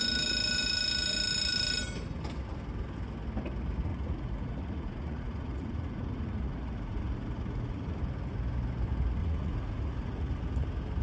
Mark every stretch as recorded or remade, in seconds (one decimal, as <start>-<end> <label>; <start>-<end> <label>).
0.0-3.9 recorded; 3.9-8.0 remade; 8.0-9.2 recorded; 9.2-10.4 remade; 10.4-11.0 recorded